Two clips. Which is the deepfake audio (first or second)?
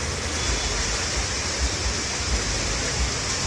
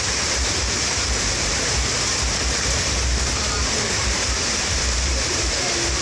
second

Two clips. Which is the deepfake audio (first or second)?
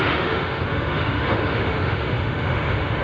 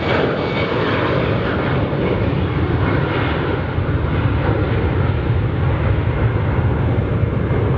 first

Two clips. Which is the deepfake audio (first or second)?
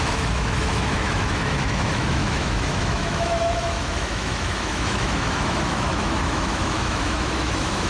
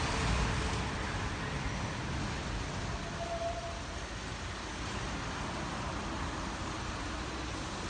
first